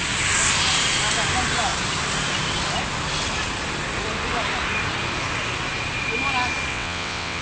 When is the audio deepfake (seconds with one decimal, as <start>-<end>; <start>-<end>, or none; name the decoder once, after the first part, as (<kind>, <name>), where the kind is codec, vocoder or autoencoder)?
6.7-7.4 (vocoder, WaveNeXt)